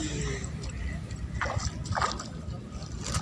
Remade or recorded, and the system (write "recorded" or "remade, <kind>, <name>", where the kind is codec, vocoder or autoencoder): recorded